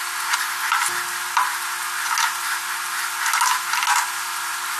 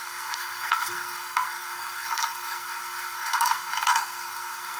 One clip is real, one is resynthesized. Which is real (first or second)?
first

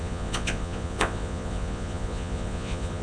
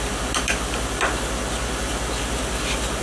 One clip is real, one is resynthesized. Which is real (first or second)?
second